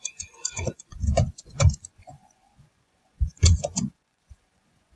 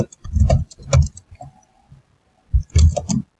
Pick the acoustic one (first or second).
second